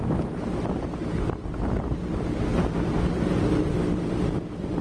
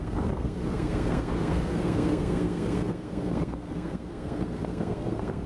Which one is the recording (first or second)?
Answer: first